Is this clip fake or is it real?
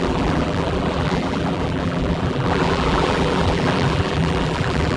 fake